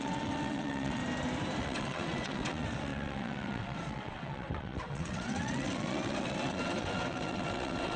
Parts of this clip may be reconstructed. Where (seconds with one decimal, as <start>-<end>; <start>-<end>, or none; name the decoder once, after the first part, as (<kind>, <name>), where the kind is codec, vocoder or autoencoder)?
0.0-1.0 (vocoder, WaveNeXt); 1.6-8.0